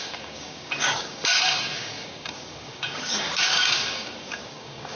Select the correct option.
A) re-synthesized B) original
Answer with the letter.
A